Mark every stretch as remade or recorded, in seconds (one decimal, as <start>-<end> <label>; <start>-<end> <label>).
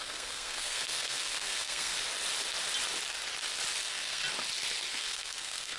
0.0-1.9 remade; 1.9-3.8 recorded; 3.8-4.2 remade; 4.2-4.9 recorded; 4.9-5.8 remade